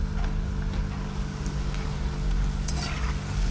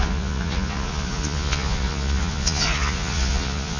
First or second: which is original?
first